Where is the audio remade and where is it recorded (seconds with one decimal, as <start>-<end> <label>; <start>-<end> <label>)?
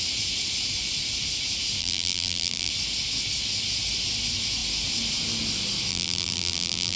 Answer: 0.0-1.8 recorded; 1.8-2.7 remade; 2.7-5.9 recorded; 5.9-7.0 remade